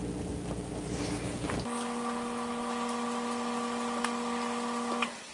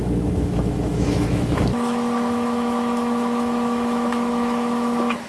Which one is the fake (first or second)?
second